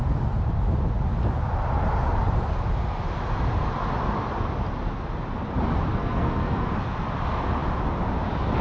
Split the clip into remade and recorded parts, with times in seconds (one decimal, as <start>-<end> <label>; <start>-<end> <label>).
0.0-5.9 recorded; 5.9-6.7 remade; 6.7-8.6 recorded